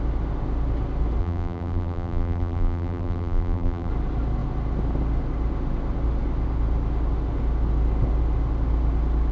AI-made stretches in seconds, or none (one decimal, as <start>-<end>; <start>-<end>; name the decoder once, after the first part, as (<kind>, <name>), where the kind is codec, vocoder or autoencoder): 1.2-3.9 (vocoder, BigVGAN v2)

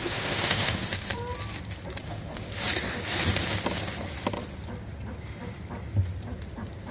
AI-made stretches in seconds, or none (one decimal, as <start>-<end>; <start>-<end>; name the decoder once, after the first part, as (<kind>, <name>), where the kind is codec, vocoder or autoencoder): 0.0-1.1 (autoencoder, DAC-VAE); 2.0-2.5

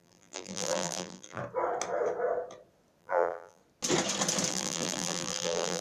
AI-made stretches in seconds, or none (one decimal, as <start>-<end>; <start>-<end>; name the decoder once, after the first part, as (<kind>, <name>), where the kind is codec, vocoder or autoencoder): 0.0-1.4 (vocoder, BigVGAN v2); 3.0-3.6; 4.5-5.8